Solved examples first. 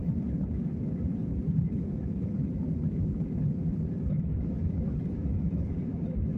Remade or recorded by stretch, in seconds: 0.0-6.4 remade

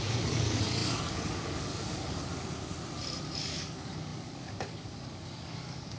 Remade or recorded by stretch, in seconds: 0.0-2.7 remade; 2.7-3.4 recorded; 3.4-6.0 remade

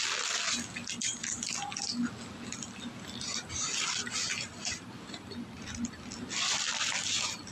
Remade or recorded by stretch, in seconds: 0.0-7.5 recorded